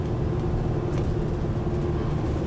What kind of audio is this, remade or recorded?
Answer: recorded